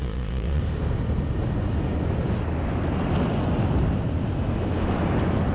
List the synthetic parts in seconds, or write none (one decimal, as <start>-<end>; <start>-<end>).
0.0-0.6